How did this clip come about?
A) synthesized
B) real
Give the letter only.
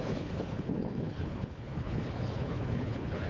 A